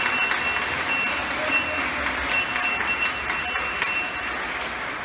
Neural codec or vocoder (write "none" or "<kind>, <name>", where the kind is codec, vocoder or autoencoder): none